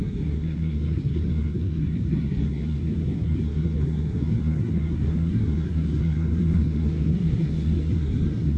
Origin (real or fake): fake